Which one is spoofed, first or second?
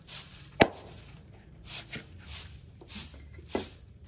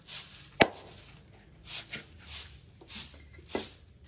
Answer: first